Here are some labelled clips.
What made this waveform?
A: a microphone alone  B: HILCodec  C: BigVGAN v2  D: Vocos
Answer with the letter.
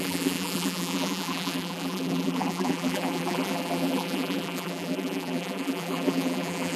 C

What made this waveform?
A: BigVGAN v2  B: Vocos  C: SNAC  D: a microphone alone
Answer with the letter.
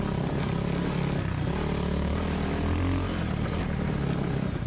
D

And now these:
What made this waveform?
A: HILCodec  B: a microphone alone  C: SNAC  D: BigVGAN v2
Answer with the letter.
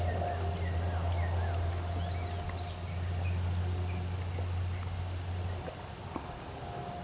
B